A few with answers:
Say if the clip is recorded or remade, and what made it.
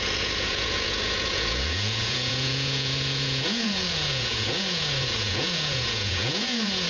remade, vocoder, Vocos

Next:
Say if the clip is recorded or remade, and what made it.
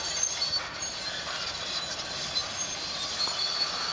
recorded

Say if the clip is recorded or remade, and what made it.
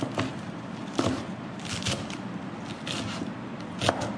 recorded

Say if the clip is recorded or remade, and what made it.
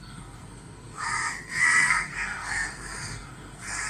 remade, codec, SNAC